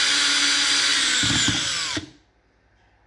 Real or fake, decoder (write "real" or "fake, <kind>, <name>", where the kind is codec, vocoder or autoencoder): real